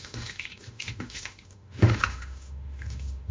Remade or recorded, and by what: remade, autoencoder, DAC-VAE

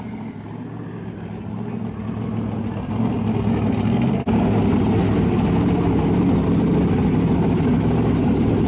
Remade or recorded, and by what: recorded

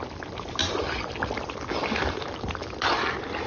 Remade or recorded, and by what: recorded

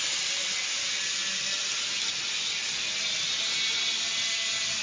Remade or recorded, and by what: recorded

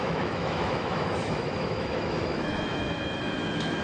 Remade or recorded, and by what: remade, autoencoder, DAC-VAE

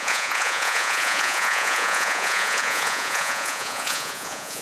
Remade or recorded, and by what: remade, vocoder, Vocos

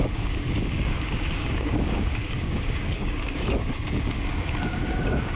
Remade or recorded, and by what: remade, codec, DAC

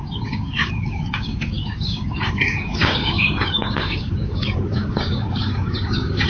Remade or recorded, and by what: remade, codec, DAC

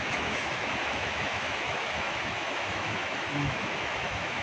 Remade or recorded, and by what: remade, autoencoder, DAC-VAE